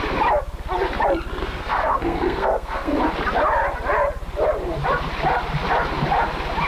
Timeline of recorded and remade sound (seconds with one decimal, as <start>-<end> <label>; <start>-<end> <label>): 0.0-1.4 recorded; 1.4-3.0 remade; 3.0-6.7 recorded